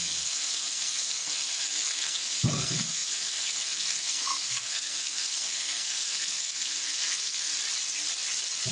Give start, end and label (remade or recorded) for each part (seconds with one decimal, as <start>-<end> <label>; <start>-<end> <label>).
0.0-7.5 remade; 7.5-8.7 recorded